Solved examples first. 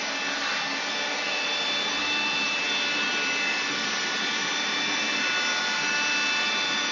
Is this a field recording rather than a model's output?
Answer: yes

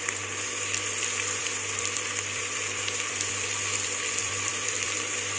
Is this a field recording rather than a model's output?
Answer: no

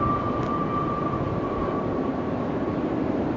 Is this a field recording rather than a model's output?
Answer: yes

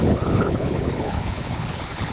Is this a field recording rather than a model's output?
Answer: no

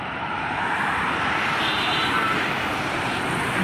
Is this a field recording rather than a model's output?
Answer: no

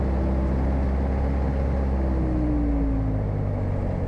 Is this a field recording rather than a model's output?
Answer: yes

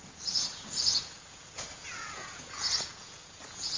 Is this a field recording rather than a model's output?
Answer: no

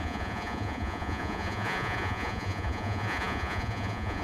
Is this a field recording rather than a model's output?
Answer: no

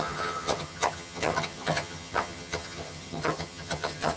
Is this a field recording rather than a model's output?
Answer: no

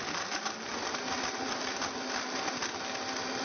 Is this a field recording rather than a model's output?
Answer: yes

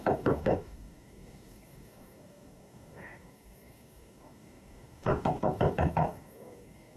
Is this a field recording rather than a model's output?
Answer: no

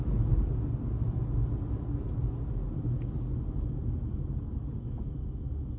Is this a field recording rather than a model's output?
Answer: yes